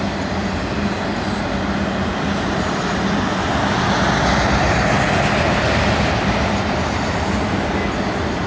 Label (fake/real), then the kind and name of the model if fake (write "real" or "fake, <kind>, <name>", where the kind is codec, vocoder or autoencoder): real